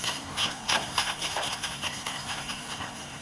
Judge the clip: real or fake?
fake